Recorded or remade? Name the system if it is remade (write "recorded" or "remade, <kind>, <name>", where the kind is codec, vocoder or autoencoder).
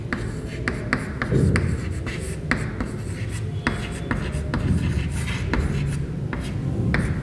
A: recorded